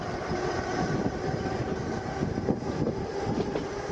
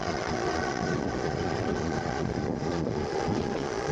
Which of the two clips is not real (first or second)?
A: second